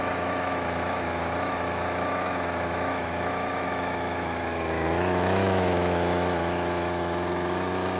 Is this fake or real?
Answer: fake